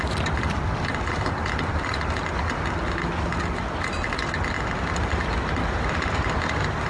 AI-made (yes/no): no